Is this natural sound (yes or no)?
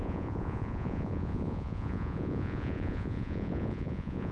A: no